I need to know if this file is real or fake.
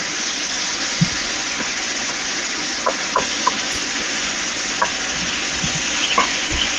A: fake